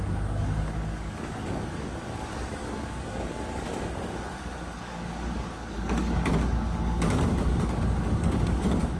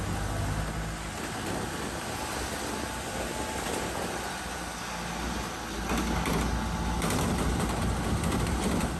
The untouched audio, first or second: second